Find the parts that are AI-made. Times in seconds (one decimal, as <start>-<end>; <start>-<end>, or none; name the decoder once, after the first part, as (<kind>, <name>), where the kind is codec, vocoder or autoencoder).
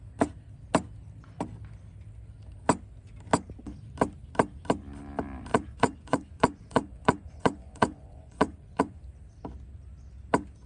5.5-9.0 (vocoder, Vocos)